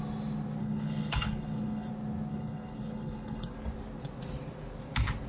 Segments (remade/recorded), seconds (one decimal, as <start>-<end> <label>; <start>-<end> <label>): 0.0-0.6 recorded; 0.6-1.9 remade; 1.9-2.3 recorded; 2.3-3.5 remade; 3.5-5.3 recorded